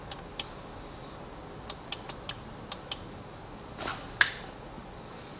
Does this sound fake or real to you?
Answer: real